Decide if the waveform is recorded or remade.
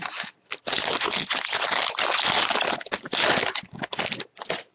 recorded